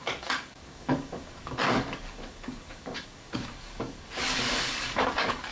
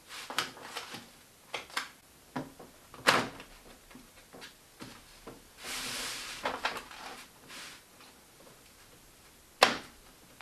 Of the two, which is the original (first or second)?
second